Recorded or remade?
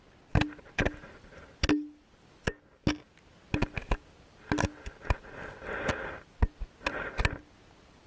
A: recorded